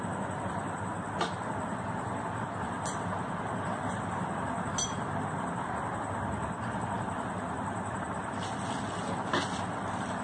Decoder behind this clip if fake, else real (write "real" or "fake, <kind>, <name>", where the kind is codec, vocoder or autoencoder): real